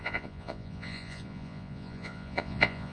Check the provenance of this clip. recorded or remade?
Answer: remade